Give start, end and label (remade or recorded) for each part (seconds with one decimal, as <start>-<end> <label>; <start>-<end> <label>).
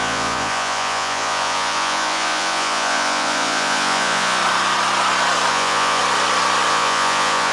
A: 0.0-4.4 remade; 4.4-5.5 recorded; 5.5-6.0 remade; 6.0-6.7 recorded; 6.7-7.5 remade